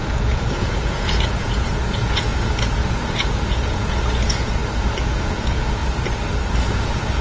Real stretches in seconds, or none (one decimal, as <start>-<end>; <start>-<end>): 4.6-5.1; 5.8-6.7